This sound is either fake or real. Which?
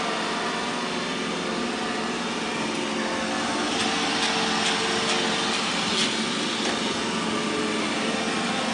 real